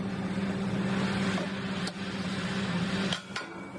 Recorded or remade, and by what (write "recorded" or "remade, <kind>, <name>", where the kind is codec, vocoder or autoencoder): recorded